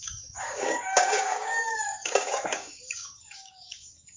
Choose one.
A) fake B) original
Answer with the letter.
A